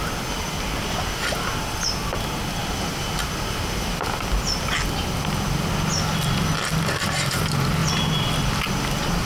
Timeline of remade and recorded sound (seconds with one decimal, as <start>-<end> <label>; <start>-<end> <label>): 0.0-9.3 recorded